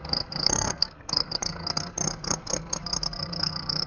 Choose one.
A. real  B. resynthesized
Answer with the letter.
B